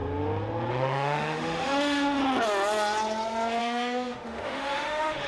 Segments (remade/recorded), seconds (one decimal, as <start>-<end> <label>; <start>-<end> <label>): 0.0-0.7 recorded; 0.7-2.2 remade; 2.2-3.6 recorded; 3.6-5.3 remade